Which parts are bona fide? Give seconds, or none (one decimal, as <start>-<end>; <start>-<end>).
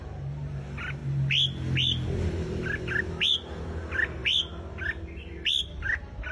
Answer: 0.0-6.3